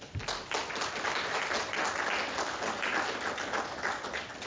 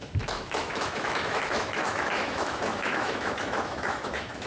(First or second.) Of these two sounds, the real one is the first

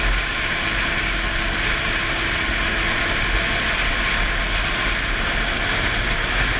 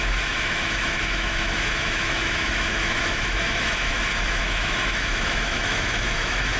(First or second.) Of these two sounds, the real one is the first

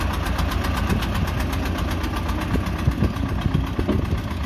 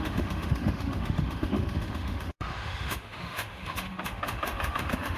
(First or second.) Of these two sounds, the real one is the first